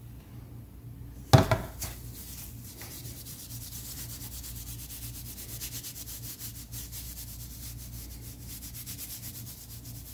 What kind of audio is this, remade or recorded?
recorded